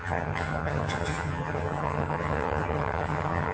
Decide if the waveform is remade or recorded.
remade